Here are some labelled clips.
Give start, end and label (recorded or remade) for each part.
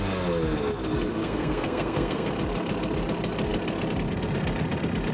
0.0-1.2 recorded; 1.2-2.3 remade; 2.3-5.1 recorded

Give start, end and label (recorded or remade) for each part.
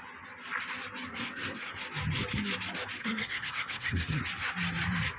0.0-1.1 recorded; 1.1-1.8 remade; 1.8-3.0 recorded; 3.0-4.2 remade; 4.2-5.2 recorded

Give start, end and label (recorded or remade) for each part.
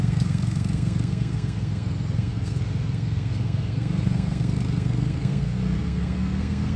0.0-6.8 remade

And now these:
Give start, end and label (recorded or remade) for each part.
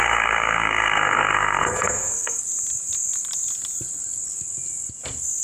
0.0-2.4 remade; 2.4-5.4 recorded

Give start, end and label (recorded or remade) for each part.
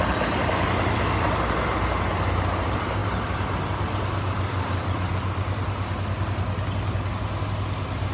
0.0-8.1 recorded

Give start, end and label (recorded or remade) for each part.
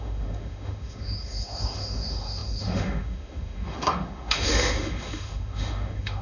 0.0-6.2 remade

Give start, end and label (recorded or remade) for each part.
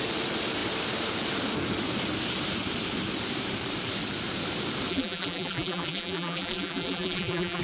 0.0-4.9 recorded; 4.9-7.6 remade